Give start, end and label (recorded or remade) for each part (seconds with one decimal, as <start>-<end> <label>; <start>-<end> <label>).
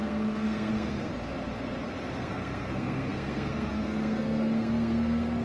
0.0-1.1 remade; 1.1-2.1 recorded; 2.1-5.4 remade